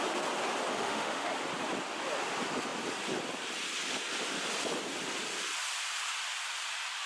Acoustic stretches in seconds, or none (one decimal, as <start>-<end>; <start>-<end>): 0.0-0.7; 1.3-7.1